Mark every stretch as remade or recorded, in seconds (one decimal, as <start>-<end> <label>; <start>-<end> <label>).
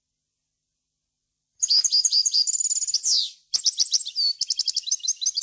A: 0.0-1.2 recorded; 1.2-4.4 remade; 4.4-5.4 recorded